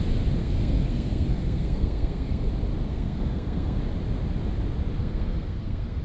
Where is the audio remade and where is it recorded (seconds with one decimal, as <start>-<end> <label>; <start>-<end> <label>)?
0.0-0.4 recorded; 0.4-2.5 remade; 2.5-2.9 recorded; 2.9-3.8 remade; 3.8-5.0 recorded; 5.0-6.0 remade